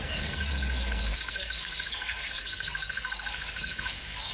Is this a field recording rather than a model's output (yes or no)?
no